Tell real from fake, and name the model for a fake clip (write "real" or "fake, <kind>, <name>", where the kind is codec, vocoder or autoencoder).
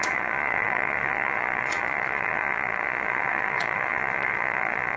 fake, vocoder, Vocos